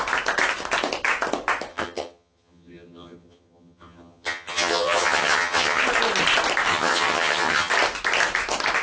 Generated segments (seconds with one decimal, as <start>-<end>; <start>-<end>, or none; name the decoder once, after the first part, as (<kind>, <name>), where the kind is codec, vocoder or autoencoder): 1.7-5.8 (vocoder, HiFi-GAN); 6.7-7.7